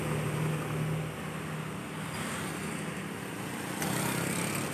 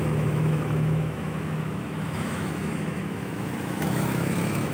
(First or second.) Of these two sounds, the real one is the first